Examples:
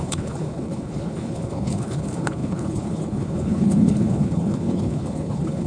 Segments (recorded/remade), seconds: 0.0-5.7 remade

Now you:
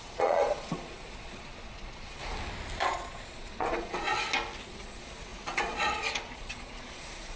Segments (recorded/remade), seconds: 0.0-2.2 remade; 2.2-2.8 recorded; 2.8-4.1 remade; 4.1-4.7 recorded; 4.7-7.4 remade

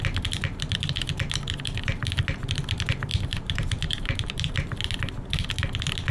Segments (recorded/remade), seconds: 0.0-3.1 recorded; 3.1-4.5 remade; 4.5-6.1 recorded

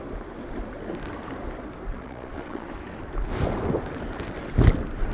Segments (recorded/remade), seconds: 0.0-1.9 recorded; 1.9-2.7 remade; 2.7-5.1 recorded

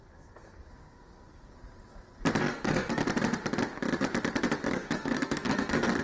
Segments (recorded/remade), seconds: 0.0-1.5 remade; 1.5-2.4 recorded; 2.4-3.0 remade; 3.0-4.7 recorded; 4.7-6.0 remade

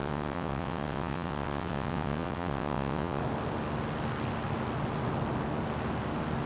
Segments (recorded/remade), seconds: 0.0-3.2 remade; 3.2-6.5 recorded

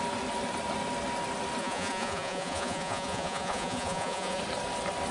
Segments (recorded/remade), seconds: 0.0-1.6 recorded; 1.6-4.4 remade; 4.4-5.1 recorded

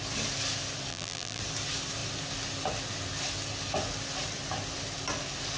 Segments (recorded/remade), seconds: 0.0-0.9 recorded; 0.9-1.4 remade; 1.4-5.6 recorded